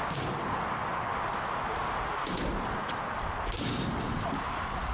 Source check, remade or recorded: recorded